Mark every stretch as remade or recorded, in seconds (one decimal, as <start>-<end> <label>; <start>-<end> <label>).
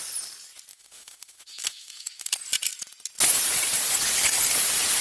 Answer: 0.0-0.7 recorded; 0.7-2.3 remade; 2.3-5.0 recorded